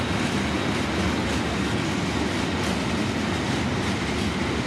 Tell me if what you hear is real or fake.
real